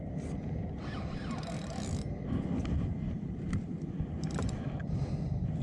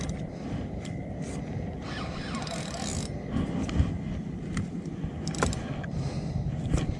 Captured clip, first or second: second